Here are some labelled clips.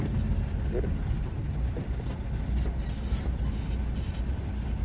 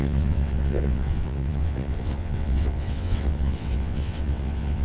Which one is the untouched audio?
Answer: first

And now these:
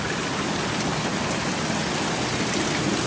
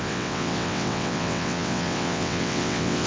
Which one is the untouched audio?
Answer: first